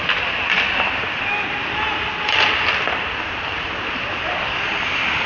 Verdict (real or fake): real